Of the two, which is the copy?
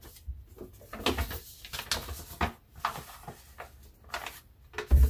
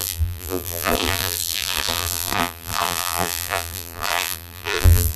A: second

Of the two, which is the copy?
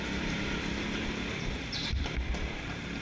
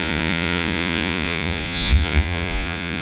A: second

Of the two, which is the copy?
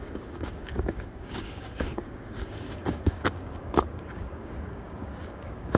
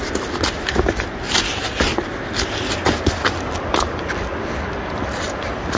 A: first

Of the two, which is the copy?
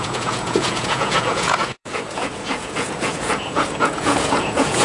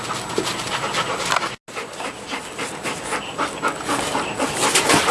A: first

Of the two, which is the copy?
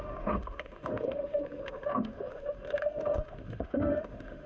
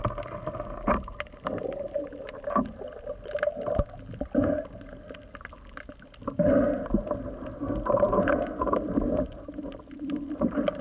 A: first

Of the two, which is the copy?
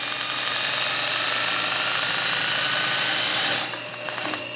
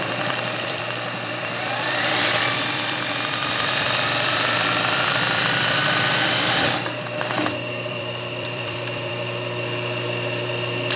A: second